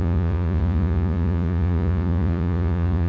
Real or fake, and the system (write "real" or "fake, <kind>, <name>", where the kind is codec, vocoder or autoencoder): fake, vocoder, Vocos